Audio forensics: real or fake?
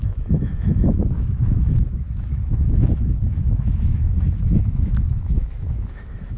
fake